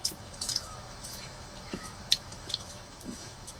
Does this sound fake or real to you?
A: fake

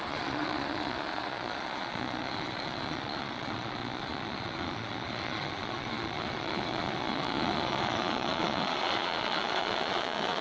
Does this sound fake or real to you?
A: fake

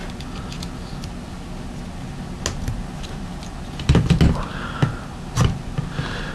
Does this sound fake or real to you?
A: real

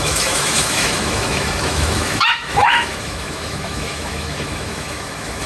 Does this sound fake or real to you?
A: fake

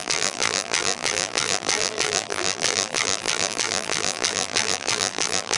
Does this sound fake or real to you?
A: fake